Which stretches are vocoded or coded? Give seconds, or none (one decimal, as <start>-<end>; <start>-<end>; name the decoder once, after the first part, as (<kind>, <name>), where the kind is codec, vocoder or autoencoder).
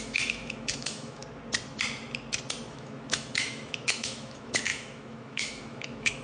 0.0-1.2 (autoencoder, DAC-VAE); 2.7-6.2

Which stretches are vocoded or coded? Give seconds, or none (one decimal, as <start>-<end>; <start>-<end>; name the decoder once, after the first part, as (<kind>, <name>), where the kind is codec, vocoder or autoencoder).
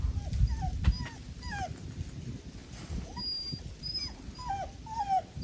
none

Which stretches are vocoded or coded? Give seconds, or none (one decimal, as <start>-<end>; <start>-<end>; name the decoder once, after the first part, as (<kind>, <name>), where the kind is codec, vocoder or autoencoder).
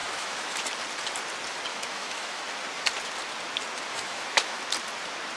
0.0-0.6 (autoencoder, DAC-VAE); 1.7-2.4; 3.9-4.6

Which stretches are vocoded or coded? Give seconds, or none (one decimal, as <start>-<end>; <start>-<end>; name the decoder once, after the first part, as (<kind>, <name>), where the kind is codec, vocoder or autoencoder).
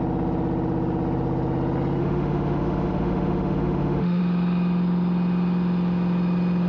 2.0-4.2 (autoencoder, DAC-VAE)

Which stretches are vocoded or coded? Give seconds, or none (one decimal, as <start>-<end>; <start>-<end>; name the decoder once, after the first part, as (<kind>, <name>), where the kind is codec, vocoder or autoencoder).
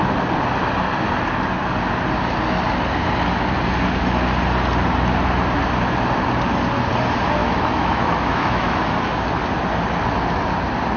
7.4-8.8 (autoencoder, DAC-VAE)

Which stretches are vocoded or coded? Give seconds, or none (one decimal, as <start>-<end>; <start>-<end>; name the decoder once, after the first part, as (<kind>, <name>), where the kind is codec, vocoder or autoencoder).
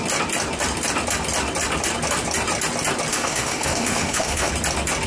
3.1-4.5 (autoencoder, DAC-VAE)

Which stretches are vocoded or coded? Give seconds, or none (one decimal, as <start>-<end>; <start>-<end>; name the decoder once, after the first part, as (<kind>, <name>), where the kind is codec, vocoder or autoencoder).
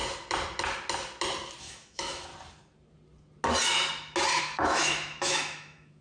1.6-2.3 (autoencoder, DAC-VAE); 4.4-6.0